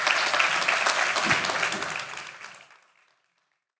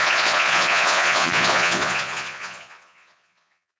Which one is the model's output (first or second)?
second